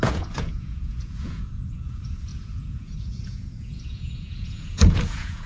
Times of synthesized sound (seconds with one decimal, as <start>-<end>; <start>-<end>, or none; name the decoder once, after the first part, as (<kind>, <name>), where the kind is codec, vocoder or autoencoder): 0.0-5.5 (vocoder, Vocos)